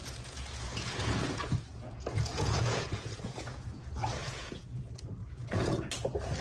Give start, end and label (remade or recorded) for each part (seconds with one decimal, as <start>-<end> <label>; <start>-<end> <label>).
0.0-3.8 remade; 3.8-4.2 recorded; 4.2-4.8 remade; 4.8-5.2 recorded; 5.2-5.9 remade; 5.9-6.4 recorded